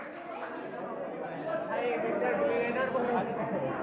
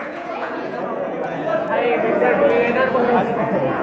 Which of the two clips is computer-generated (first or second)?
second